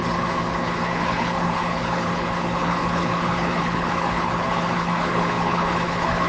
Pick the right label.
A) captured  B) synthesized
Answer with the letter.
B